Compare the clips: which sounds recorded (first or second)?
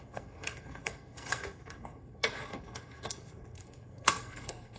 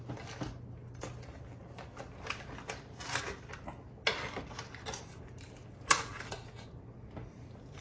second